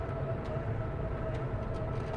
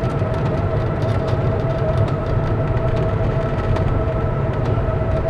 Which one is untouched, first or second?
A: first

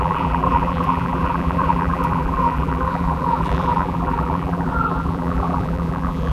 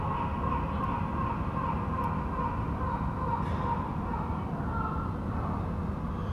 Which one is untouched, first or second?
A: second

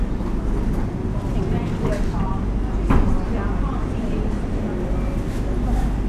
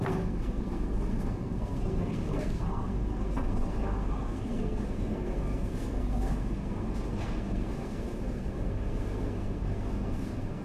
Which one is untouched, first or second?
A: first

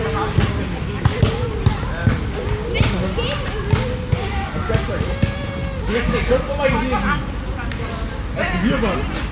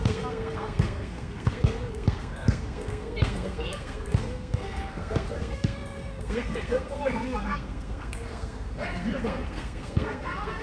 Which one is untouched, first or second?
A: first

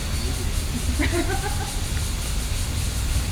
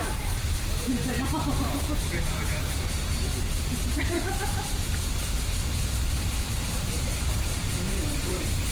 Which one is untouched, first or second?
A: first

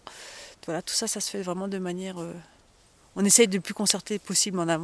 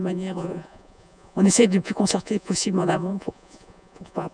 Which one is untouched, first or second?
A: first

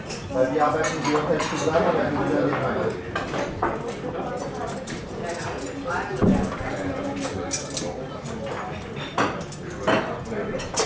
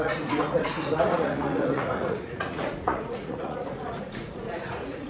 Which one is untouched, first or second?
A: first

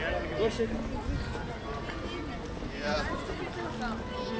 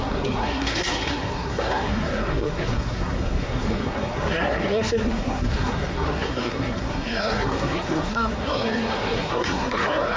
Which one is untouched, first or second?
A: first